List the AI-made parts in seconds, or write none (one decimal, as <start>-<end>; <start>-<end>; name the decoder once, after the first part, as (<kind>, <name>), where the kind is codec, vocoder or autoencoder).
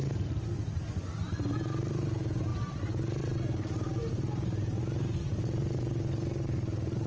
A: none